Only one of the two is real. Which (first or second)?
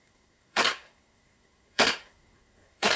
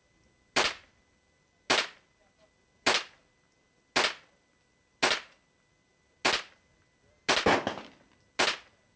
second